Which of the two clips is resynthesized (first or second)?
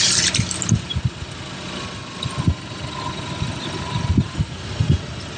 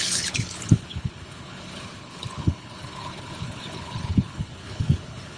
second